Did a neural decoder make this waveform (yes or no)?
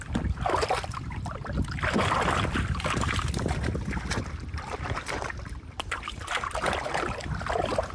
yes